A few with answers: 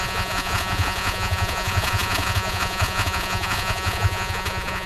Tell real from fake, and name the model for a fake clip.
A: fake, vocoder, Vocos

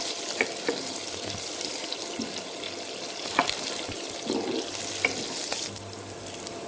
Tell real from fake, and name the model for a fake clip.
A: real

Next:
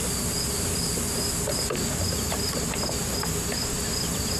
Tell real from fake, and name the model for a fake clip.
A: real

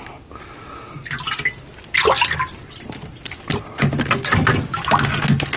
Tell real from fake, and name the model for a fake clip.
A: real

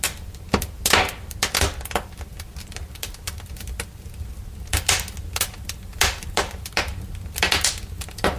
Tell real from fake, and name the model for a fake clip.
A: real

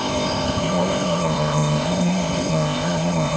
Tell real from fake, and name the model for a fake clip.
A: fake, codec, ZipCodec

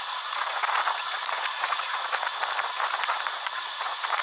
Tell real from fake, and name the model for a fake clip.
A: fake, vocoder, Vocos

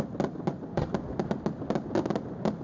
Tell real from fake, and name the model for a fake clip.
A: real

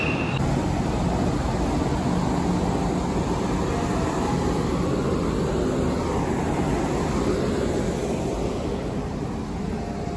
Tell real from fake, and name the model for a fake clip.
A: real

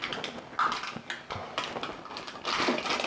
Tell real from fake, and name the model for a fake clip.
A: real